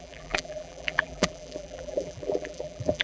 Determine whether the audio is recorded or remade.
remade